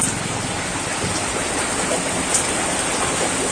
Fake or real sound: real